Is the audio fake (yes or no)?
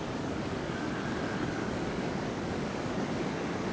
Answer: yes